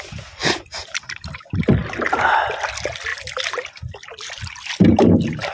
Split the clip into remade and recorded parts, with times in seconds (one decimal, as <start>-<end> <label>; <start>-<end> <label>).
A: 0.0-5.5 recorded